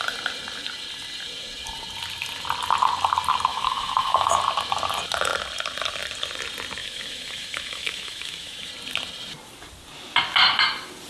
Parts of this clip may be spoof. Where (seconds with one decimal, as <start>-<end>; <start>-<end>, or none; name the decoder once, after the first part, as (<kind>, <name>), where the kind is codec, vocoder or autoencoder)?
3.5-4.4 (autoencoder, DAC-VAE); 6.8-8.7